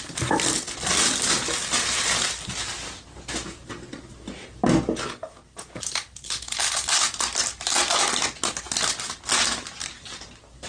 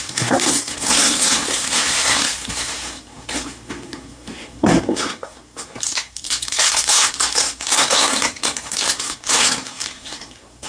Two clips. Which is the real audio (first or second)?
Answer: first